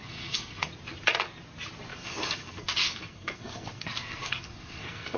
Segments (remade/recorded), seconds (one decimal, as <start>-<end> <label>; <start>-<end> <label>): 0.0-0.7 remade; 0.7-1.9 recorded; 1.9-5.2 remade

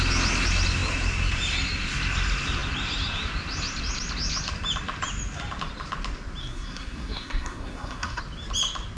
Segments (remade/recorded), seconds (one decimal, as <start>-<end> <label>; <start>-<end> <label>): 0.0-6.4 recorded; 6.4-8.2 remade; 8.2-9.0 recorded

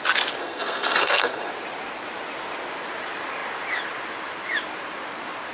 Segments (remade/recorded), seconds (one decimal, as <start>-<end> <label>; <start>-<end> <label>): 0.0-0.4 recorded; 0.4-1.5 remade; 1.5-5.5 recorded